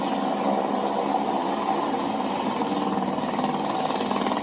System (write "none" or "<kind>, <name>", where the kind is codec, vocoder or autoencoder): none